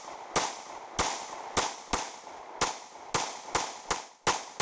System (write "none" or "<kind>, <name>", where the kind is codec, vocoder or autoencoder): none